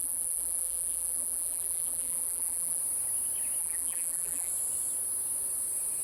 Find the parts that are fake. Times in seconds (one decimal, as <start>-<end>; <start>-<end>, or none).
0.0-2.8; 3.6-4.5